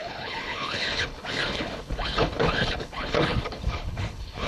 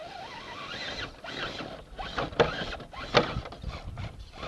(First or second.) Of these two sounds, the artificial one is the first